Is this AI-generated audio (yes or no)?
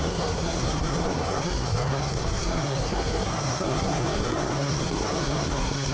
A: yes